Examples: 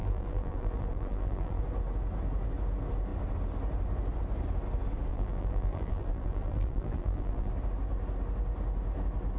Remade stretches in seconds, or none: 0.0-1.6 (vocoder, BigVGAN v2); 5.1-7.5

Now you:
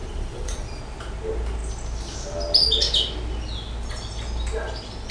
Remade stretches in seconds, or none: 0.0-0.8 (vocoder, Vocos)

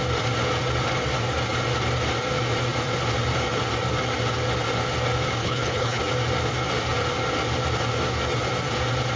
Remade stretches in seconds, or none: 5.4-6.0 (codec, HILCodec)